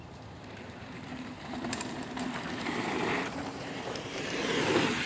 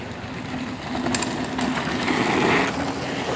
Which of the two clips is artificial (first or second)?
first